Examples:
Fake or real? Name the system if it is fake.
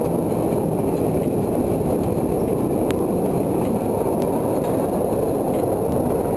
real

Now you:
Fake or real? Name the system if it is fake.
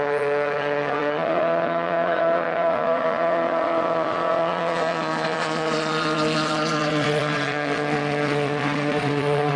fake, vocoder, Vocos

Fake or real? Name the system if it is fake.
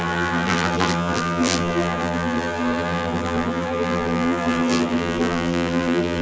fake, vocoder, BigVGAN v2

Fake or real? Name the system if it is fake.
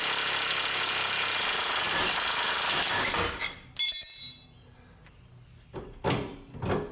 real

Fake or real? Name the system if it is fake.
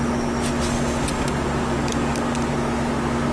real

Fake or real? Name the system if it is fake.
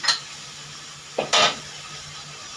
real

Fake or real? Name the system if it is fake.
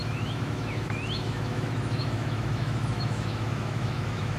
fake, autoencoder, DAC-VAE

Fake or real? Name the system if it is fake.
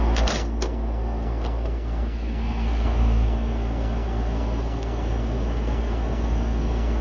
fake, codec, SNAC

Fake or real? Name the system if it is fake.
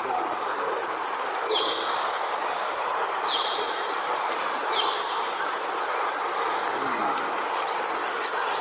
real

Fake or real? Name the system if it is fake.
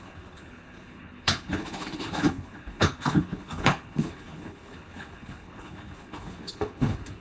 fake, codec, HILCodec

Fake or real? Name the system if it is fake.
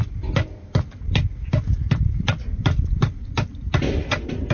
real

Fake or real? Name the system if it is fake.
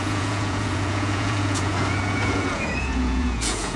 fake, vocoder, Vocos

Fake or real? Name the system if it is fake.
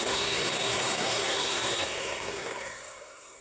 fake, codec, SNAC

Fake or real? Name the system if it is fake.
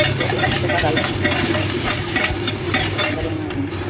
fake, vocoder, BigVGAN v2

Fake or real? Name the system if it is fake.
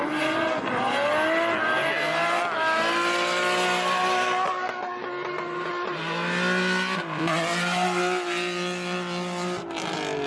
real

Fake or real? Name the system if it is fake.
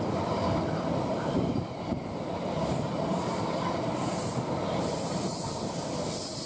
fake, vocoder, BigVGAN v2